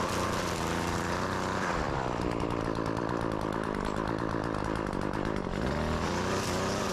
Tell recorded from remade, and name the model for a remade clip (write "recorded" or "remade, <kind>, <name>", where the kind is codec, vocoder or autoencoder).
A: remade, vocoder, BigVGAN v2